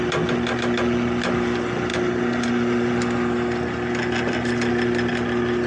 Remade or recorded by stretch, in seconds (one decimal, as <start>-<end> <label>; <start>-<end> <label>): 0.0-5.7 recorded